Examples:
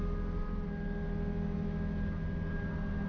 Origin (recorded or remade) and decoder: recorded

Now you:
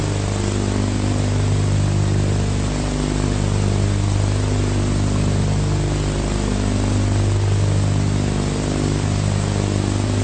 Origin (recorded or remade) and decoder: recorded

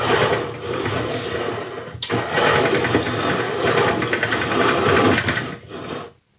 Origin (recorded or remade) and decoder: recorded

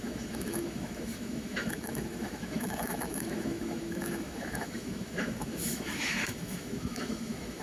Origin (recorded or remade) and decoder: remade, autoencoder, DAC-VAE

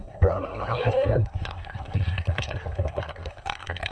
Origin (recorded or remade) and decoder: remade, codec, SNAC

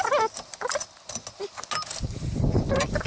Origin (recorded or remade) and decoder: recorded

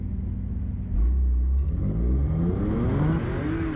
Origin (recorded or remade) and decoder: recorded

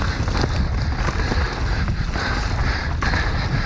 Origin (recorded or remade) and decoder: recorded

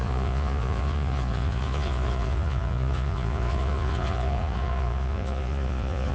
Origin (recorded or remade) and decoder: remade, vocoder, Vocos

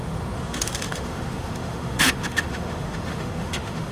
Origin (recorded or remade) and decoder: remade, autoencoder, DAC-VAE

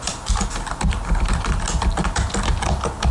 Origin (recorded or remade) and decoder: recorded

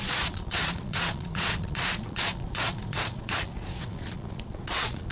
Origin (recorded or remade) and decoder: remade, vocoder, Vocos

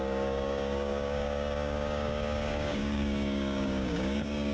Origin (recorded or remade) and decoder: remade, codec, DAC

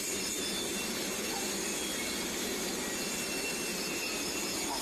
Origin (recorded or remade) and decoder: recorded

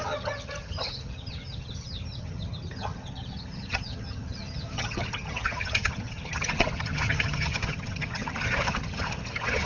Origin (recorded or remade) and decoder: remade, vocoder, HiFi-GAN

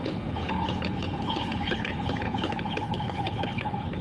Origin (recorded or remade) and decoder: remade, codec, HILCodec